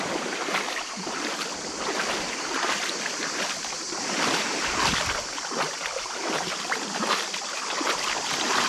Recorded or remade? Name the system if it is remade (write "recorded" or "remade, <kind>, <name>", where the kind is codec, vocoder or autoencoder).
recorded